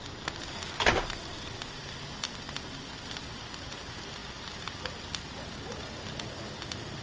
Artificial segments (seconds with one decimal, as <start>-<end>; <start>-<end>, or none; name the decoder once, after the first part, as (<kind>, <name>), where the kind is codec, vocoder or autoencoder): none